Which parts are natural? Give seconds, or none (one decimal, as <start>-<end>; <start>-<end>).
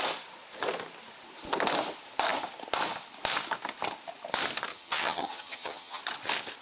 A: 0.0-4.7; 6.0-6.6